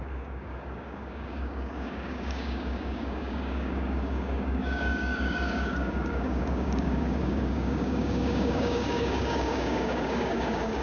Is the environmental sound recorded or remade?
remade